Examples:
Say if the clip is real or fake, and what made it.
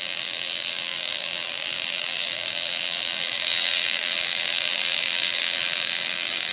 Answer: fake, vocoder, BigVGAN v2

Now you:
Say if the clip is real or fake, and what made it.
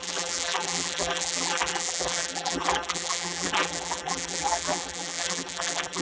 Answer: fake, vocoder, BigVGAN v2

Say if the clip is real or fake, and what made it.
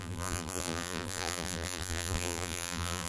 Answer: fake, vocoder, BigVGAN v2